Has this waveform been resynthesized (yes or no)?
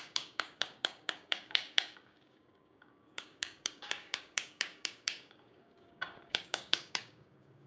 yes